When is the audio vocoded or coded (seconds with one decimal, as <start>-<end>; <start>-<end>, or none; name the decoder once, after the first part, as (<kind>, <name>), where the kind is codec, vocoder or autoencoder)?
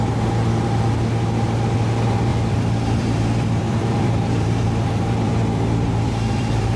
2.3-6.8 (vocoder, BigVGAN v2)